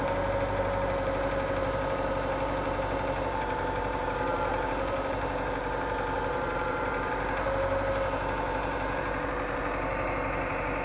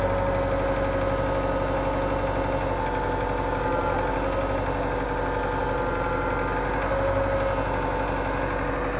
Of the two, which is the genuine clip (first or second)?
second